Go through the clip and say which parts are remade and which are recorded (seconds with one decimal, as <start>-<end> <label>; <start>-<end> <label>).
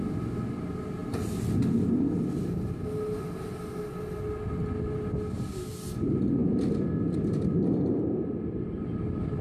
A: 0.0-9.4 recorded